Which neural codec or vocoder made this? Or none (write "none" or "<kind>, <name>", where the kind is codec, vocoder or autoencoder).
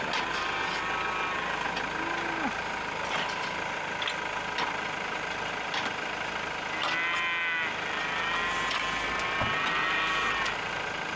none